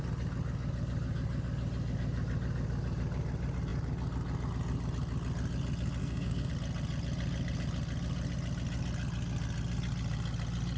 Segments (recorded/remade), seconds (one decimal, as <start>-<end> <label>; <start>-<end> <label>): 0.0-6.0 recorded; 6.0-6.5 remade; 6.5-10.8 recorded